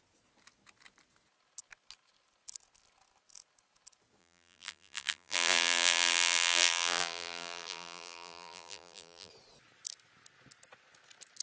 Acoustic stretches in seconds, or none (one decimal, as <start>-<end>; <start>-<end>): 0.0-4.2; 9.3-11.4